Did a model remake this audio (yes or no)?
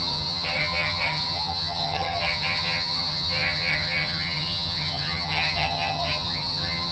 yes